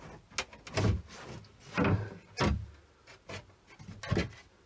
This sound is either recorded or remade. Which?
recorded